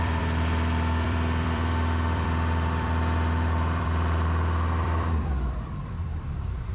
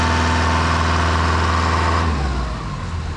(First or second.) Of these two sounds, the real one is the second